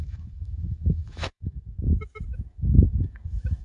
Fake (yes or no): yes